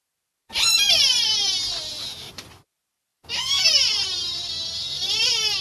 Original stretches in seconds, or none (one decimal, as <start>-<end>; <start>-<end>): 0.0-1.1; 1.7-3.1